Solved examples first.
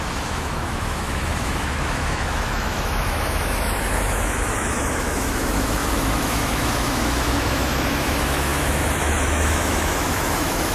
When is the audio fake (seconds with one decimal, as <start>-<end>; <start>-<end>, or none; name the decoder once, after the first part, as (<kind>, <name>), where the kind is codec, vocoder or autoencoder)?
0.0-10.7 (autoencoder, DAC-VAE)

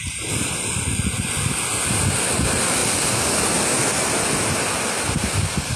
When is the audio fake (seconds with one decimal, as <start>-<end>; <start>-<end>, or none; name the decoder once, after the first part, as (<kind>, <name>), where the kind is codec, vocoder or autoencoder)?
none

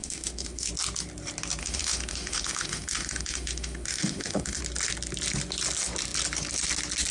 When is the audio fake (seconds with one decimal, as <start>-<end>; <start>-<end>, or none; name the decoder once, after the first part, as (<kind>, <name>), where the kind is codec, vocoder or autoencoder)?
0.0-0.7 (autoencoder, DAC-VAE); 1.6-4.6